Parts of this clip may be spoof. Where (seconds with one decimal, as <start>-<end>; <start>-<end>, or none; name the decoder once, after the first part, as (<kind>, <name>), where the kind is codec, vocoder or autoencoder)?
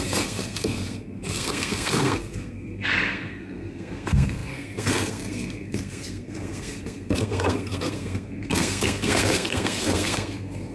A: 0.0-10.7 (codec, SNAC)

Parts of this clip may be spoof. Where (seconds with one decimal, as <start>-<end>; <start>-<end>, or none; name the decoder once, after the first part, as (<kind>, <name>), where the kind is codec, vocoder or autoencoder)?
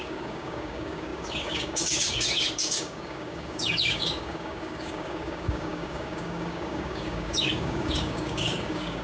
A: 0.0-9.0 (codec, DAC)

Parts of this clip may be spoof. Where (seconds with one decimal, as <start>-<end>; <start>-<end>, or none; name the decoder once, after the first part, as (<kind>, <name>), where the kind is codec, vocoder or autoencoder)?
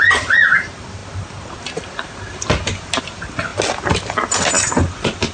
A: none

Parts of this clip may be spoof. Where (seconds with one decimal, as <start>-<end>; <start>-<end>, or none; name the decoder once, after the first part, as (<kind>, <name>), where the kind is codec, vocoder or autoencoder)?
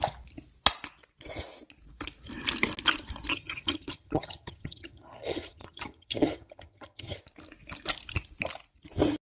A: 3.3-7.2 (vocoder, HiFi-GAN)